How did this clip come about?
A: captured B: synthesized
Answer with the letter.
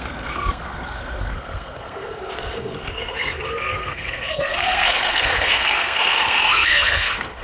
B